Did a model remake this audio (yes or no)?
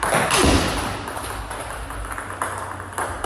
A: no